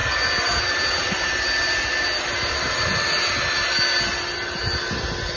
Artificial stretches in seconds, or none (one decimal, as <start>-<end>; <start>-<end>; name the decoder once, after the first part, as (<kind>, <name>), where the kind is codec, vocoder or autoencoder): none